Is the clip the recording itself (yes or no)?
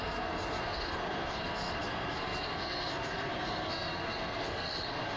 no